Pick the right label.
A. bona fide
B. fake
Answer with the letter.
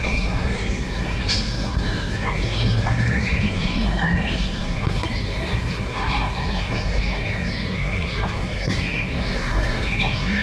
B